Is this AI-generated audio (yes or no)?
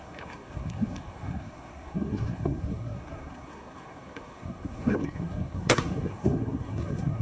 yes